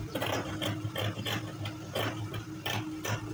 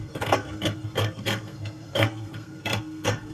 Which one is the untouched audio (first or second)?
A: first